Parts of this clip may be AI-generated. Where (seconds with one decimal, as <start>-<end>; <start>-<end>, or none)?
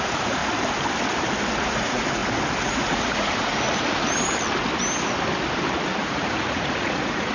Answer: 0.0-0.4; 1.6-2.2; 2.7-3.5; 6.0-7.3